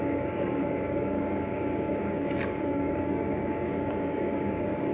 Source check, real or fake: fake